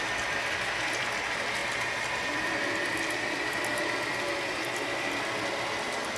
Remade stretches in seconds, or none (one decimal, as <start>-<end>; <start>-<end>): none